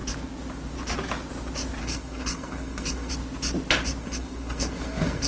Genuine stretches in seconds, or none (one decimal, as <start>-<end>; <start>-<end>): 0.0-1.8; 3.1-4.0